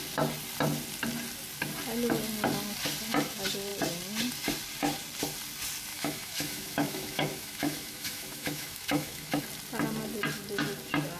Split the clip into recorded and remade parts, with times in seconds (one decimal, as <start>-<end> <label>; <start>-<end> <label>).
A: 0.0-5.9 recorded; 5.9-9.4 remade; 9.4-11.2 recorded